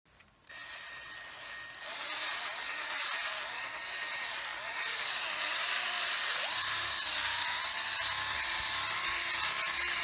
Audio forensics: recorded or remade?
recorded